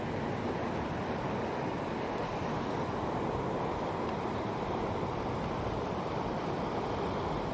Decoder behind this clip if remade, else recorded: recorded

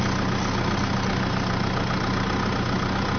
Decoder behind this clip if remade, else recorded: recorded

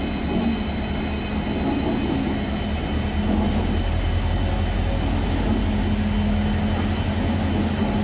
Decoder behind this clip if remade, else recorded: recorded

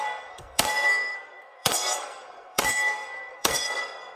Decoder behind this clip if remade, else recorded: remade, codec, SNAC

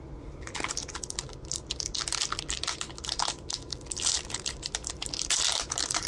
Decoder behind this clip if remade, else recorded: recorded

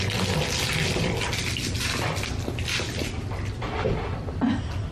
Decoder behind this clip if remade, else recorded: recorded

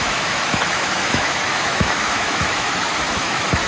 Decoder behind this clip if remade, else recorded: remade, autoencoder, DAC-VAE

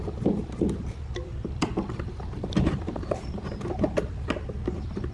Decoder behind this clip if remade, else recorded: recorded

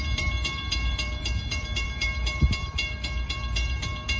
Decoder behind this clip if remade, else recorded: remade, vocoder, BigVGAN v2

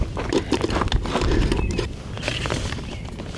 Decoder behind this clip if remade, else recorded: recorded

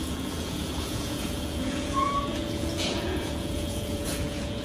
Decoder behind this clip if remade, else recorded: remade, vocoder, Vocos